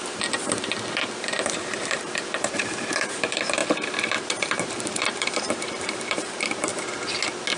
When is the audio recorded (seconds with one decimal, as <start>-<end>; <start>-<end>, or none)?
6.7-7.6

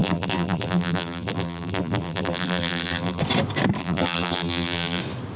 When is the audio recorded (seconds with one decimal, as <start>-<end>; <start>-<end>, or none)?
3.2-3.8; 5.0-5.4